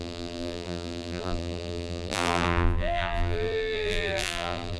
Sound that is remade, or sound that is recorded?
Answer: remade